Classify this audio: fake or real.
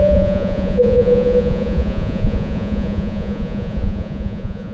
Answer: fake